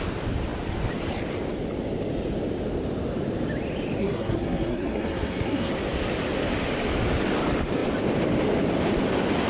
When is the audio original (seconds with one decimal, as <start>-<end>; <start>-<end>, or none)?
0.0-4.0; 5.7-9.5